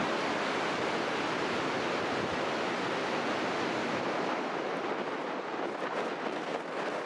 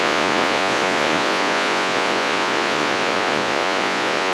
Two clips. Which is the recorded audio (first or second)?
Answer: first